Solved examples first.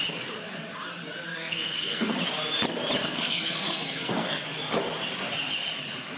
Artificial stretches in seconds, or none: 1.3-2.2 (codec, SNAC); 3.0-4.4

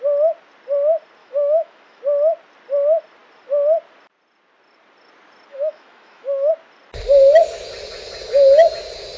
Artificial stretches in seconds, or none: 1.2-2.0 (autoencoder, DAC-VAE); 5.5-6.5

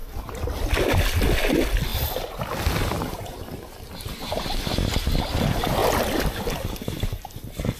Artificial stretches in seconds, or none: 5.8-6.3 (vocoder, BigVGAN v2)

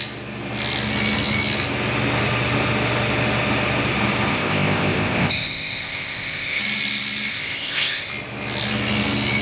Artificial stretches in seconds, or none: 4.3-6.6 (codec, ZipCodec); 7.3-8.1

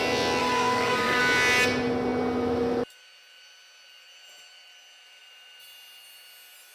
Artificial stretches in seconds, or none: 0.4-1.2 (codec, SNAC)

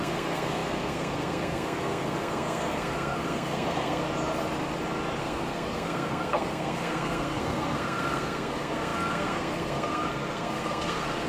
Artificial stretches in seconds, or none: 0.0-4.0 (codec, SNAC); 5.2-11.3